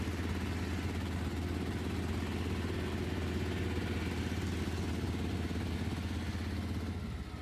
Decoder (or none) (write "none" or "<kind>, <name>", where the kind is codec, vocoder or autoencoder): none